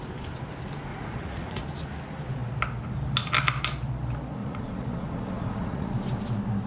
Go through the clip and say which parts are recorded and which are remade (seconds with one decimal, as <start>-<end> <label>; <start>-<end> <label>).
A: 0.0-0.9 recorded; 0.9-1.6 remade; 1.6-4.4 recorded; 4.4-5.9 remade; 5.9-6.7 recorded